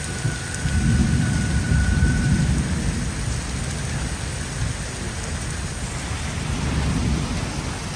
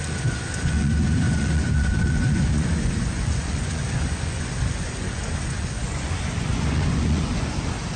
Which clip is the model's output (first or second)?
second